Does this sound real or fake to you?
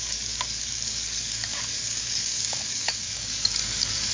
fake